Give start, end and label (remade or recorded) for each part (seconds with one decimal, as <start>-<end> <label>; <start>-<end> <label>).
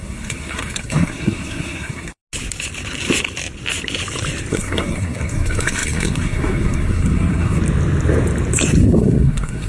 0.0-2.2 remade; 2.2-4.5 recorded; 4.5-7.6 remade; 7.6-8.8 recorded; 8.8-9.7 remade